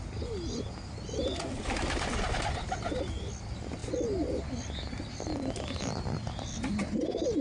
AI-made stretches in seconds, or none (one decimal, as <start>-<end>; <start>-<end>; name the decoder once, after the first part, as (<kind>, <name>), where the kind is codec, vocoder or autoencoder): none